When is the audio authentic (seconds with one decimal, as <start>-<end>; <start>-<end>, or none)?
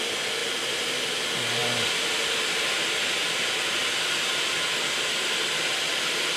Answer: 0.0-0.4; 1.0-3.2; 4.4-6.4